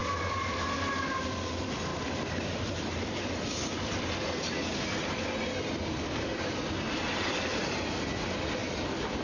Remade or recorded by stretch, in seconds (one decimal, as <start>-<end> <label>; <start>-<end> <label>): 0.0-1.1 recorded; 1.1-1.9 remade; 1.9-6.5 recorded; 6.5-8.6 remade; 8.6-9.2 recorded